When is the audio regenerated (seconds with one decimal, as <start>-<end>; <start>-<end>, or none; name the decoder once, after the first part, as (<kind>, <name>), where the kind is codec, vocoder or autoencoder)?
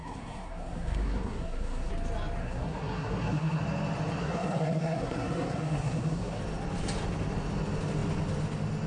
0.0-1.9 (codec, SNAC); 2.4-3.6; 4.2-6.4